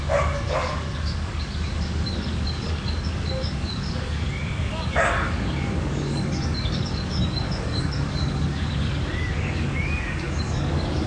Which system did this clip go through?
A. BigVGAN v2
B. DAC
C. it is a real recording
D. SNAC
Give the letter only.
B